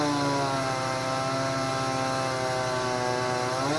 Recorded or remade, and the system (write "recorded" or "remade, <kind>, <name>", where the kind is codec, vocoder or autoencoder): recorded